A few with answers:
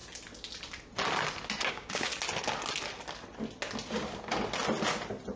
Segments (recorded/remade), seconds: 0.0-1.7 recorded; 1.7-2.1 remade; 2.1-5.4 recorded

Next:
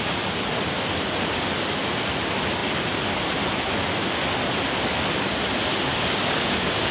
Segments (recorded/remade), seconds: 0.0-5.9 recorded; 5.9-6.9 remade

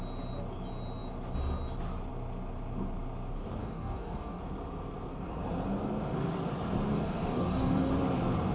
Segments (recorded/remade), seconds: 0.0-3.6 recorded; 3.6-4.4 remade; 4.4-6.9 recorded; 6.9-7.9 remade; 7.9-8.5 recorded